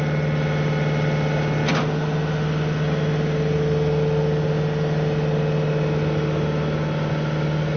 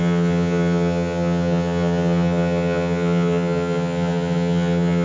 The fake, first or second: second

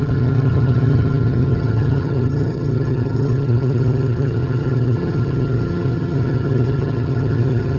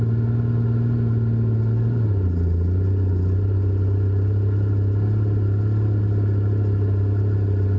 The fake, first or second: first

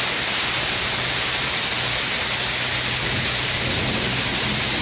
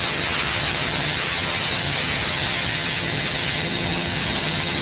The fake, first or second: second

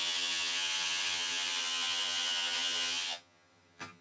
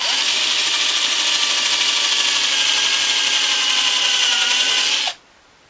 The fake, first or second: first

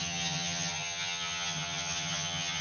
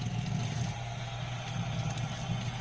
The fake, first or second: first